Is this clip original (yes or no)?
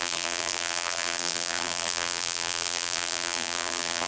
no